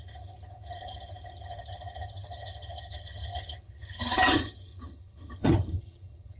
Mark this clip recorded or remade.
remade